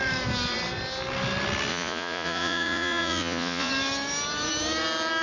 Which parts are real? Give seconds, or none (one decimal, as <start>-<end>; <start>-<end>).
0.0-1.7; 3.7-5.2